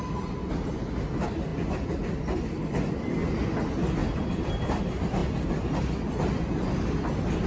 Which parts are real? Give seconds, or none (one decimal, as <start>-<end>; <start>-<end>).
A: 0.0-4.0; 4.8-7.5